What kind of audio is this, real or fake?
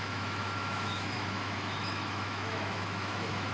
fake